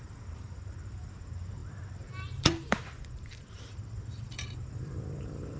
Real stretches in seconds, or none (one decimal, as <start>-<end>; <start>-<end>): none

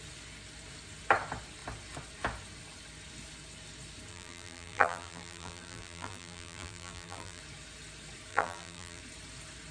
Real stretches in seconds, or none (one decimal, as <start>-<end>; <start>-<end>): 0.0-4.1; 7.4-8.3; 9.0-9.7

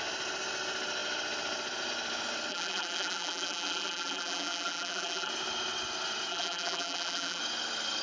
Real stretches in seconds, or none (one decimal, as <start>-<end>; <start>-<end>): 0.0-2.5; 5.3-6.3; 7.4-8.0

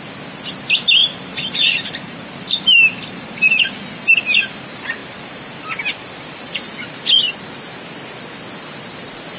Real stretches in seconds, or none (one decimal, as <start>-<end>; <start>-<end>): 0.0-1.0; 3.8-5.0; 6.6-9.4

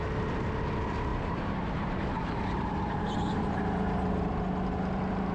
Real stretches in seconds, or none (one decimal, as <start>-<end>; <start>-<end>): 0.0-1.1; 4.3-5.3

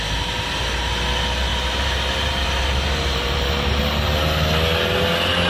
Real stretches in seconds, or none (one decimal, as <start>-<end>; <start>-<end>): 0.0-1.5; 3.8-5.5

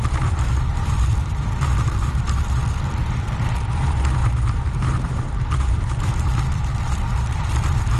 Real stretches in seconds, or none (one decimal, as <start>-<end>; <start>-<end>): 2.6-3.7

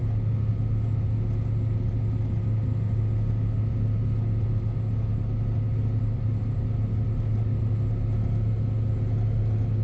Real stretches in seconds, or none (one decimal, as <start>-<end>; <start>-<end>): 0.0-9.8